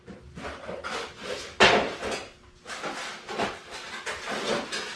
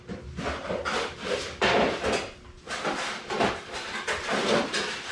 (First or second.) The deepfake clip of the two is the second